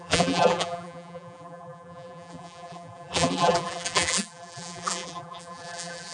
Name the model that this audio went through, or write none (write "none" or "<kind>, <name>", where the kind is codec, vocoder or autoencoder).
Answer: vocoder, BigVGAN v2